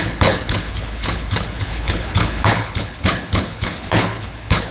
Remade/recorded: remade